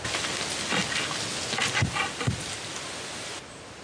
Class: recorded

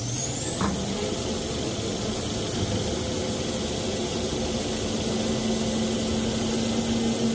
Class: recorded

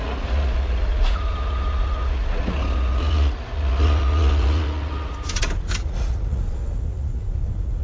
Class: remade